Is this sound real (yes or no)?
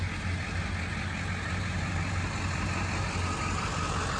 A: yes